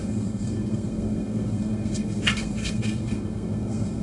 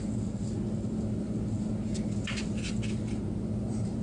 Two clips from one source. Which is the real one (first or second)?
second